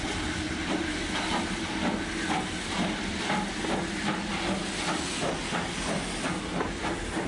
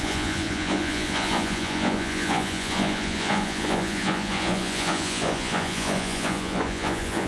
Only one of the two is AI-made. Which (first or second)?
second